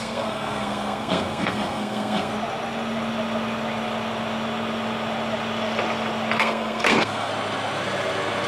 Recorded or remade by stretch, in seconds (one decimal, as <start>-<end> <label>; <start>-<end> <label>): 0.0-2.3 remade; 2.3-6.4 recorded; 6.4-7.3 remade; 7.3-8.5 recorded